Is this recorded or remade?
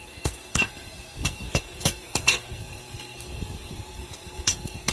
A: remade